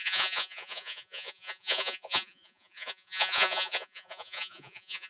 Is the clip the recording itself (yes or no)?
no